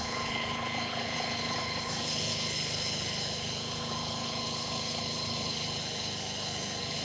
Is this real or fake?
fake